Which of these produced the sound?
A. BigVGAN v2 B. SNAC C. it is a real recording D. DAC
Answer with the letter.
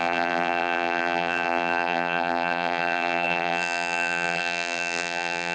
A